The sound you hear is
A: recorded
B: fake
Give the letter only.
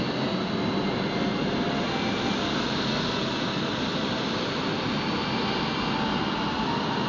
A